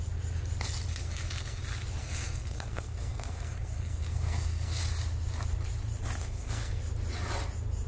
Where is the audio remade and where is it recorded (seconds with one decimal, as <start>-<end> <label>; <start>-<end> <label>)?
0.0-0.9 recorded; 0.9-1.6 remade; 1.6-2.0 recorded; 2.0-4.8 remade; 4.8-6.2 recorded; 6.2-6.8 remade; 6.8-7.9 recorded